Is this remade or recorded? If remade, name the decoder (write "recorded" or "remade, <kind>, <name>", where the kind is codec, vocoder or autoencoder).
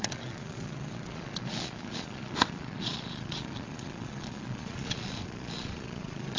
remade, vocoder, Vocos